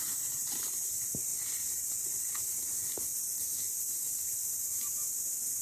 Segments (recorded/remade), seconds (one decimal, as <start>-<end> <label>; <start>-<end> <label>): 0.0-5.6 recorded